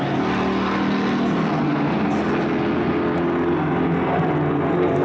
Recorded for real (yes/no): yes